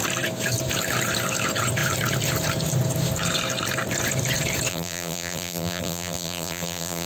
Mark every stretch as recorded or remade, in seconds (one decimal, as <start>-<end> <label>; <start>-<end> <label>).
0.0-4.7 recorded; 4.7-7.1 remade

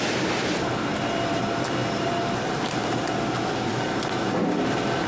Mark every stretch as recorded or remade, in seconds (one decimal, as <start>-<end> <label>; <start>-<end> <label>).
0.0-0.9 recorded; 0.9-1.4 remade; 1.4-1.8 recorded; 1.8-3.0 remade; 3.0-5.1 recorded

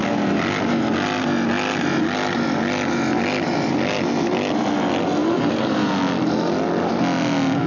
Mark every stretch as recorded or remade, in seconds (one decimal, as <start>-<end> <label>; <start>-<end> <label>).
0.0-5.2 recorded; 5.2-5.9 remade; 5.9-7.7 recorded